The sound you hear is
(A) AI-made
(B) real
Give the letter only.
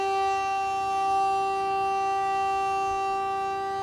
B